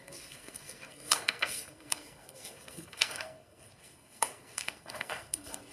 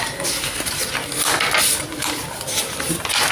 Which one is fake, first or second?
first